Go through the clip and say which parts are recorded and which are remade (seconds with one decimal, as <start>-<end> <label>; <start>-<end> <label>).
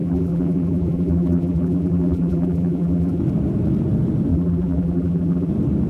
0.0-3.2 remade; 3.2-4.3 recorded; 4.3-5.5 remade; 5.5-5.9 recorded